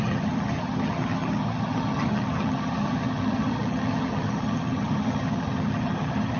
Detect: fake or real fake